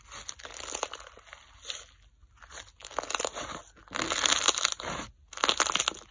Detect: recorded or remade recorded